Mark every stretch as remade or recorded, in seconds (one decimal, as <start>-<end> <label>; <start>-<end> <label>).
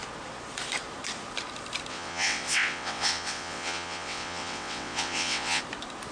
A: 0.0-1.9 recorded; 1.9-5.6 remade; 5.6-6.1 recorded